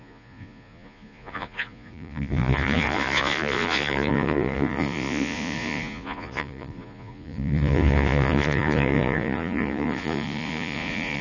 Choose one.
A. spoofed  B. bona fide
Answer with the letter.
A